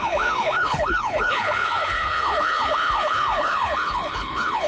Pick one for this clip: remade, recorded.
remade